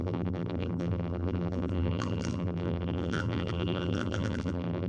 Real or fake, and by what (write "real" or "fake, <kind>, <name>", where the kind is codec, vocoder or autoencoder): fake, vocoder, BigVGAN v2